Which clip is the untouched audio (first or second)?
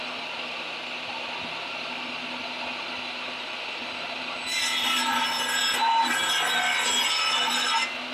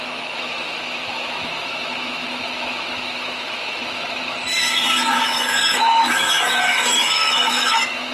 first